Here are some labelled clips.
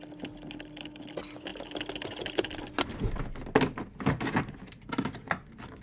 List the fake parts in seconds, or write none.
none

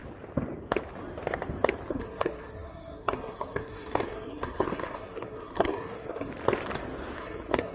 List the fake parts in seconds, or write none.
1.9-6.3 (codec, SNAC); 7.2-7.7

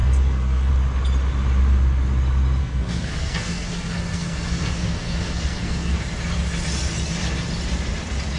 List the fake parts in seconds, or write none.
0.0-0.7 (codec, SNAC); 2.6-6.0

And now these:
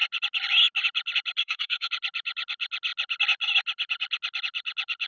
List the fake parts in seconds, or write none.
1.4-1.9 (codec, SNAC)

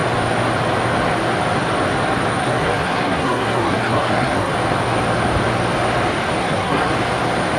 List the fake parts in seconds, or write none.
2.4-4.5 (codec, SNAC); 6.4-6.9

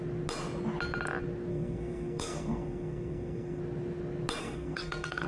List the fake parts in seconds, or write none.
1.5-3.6 (codec, SNAC); 4.4-5.3